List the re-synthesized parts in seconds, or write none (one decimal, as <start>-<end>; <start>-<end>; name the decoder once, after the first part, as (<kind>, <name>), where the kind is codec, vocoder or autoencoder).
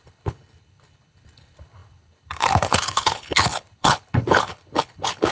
0.0-5.3 (codec, HILCodec)